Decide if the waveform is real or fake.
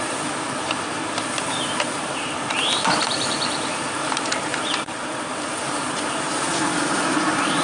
fake